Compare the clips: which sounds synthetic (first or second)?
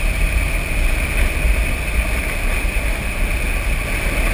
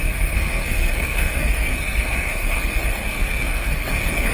second